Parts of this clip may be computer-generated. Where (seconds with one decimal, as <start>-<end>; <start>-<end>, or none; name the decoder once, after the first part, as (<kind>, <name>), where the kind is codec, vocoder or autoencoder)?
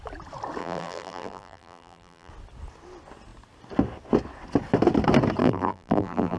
0.6-2.3 (vocoder, BigVGAN v2); 5.4-6.4